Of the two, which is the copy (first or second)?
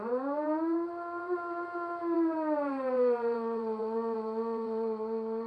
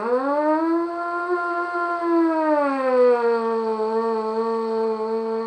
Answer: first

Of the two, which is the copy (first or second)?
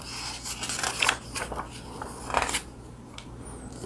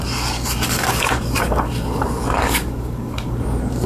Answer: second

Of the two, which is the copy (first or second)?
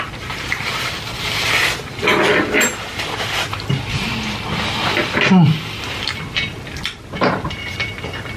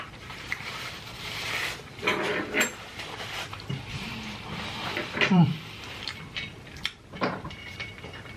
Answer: second